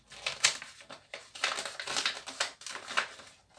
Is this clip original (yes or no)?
yes